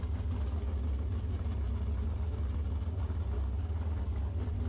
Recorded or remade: recorded